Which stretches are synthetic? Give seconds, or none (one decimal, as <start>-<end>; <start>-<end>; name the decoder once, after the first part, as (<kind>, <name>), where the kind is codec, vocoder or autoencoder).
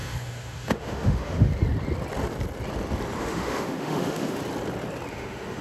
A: 0.0-1.5 (autoencoder, DAC-VAE); 3.2-4.4; 5.1-5.6